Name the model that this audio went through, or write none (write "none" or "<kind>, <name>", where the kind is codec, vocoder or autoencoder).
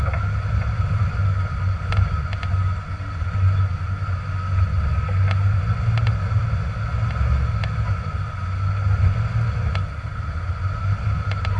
none